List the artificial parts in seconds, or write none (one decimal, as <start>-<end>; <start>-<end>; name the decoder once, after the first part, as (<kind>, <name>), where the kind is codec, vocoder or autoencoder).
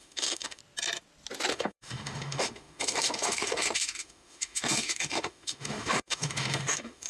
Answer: 0.0-0.6 (autoencoder, DAC-VAE); 1.5-7.1